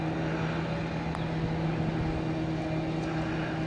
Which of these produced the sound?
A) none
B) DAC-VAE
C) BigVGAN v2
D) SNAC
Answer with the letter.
A